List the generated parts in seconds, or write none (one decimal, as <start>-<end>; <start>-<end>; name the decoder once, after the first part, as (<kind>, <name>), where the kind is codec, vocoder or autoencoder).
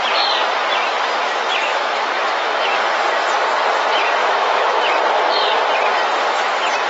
1.7-2.8 (autoencoder, DAC-VAE); 4.2-5.0